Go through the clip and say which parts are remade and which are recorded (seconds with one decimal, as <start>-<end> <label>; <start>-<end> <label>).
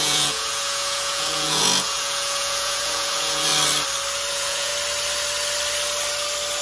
0.0-3.5 remade; 3.5-4.3 recorded; 4.3-4.7 remade; 4.7-6.6 recorded